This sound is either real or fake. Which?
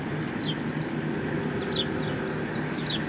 real